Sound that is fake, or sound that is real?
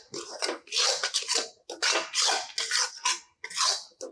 real